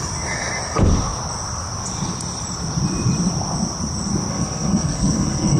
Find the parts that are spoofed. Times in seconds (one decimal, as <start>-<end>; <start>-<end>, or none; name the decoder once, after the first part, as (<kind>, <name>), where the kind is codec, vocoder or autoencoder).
4.3-5.6 (codec, SNAC)

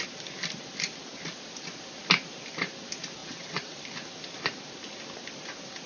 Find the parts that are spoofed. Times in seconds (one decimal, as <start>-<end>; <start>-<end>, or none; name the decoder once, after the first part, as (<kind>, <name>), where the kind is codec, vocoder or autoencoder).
3.2-3.8 (vocoder, WaveNeXt)